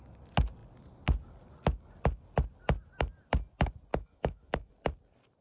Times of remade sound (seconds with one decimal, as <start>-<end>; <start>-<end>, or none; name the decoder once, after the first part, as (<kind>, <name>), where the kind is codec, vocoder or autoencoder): 3.9-4.7 (autoencoder, DAC-VAE)

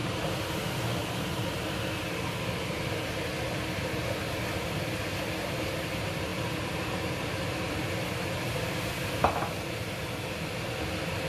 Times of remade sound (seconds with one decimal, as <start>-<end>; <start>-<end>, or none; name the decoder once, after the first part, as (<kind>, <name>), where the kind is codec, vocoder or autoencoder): 0.0-0.6 (vocoder, BigVGAN v2); 6.3-9.0